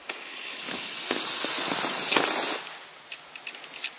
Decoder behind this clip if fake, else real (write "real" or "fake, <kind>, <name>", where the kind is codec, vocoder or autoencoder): real